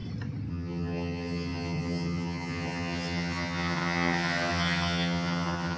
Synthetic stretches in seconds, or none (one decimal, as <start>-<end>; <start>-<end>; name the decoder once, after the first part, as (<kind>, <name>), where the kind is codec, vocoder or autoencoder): 0.5-5.8 (vocoder, HiFi-GAN)